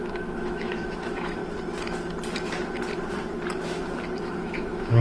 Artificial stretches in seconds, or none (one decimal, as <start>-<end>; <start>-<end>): 0.0-1.4; 4.2-5.0